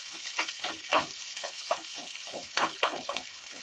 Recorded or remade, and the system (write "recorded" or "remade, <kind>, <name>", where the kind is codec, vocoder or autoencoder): remade, codec, HILCodec